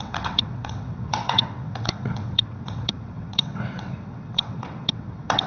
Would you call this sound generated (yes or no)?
yes